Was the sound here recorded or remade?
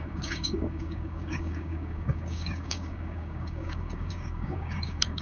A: remade